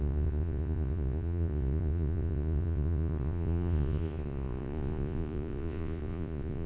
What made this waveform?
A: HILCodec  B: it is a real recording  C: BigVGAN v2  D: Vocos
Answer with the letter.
D